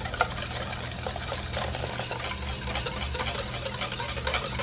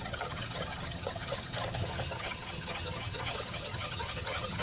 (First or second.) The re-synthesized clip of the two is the second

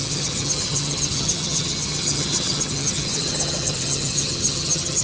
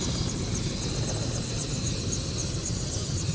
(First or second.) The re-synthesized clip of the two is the first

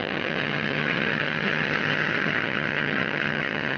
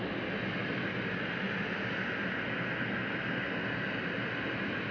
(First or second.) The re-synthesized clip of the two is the first